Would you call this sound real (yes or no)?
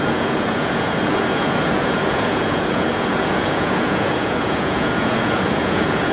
no